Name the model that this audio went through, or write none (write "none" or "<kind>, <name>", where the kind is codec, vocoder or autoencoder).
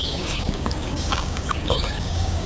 codec, DAC